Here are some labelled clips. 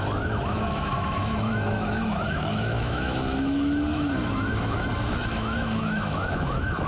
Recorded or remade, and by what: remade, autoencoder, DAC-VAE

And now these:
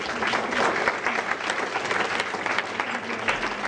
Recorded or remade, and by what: recorded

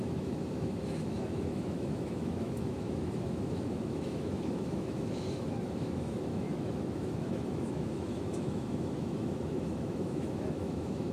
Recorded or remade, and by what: remade, autoencoder, DAC-VAE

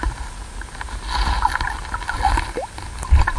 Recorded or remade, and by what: recorded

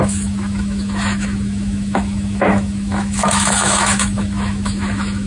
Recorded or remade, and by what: remade, autoencoder, DAC-VAE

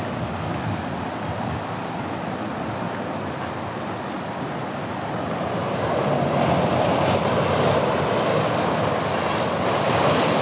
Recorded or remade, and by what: recorded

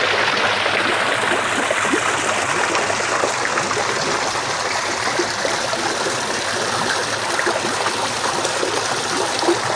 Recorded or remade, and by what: recorded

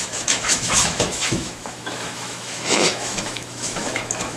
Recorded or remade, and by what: remade, autoencoder, DAC-VAE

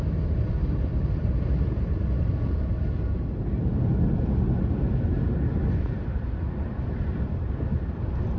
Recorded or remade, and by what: recorded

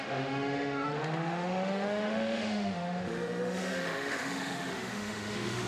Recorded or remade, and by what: remade, autoencoder, DAC-VAE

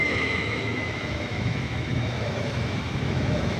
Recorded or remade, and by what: remade, autoencoder, DAC-VAE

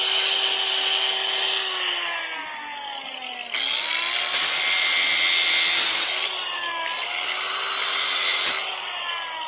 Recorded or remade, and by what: recorded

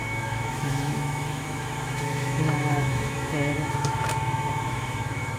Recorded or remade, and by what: remade, autoencoder, DAC-VAE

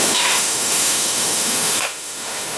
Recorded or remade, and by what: remade, autoencoder, DAC-VAE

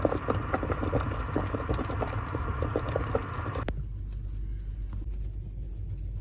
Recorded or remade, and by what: recorded